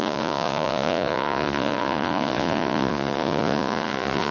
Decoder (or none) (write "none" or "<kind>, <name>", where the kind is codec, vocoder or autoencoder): vocoder, Vocos